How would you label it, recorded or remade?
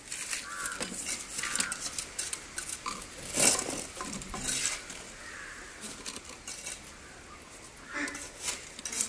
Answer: recorded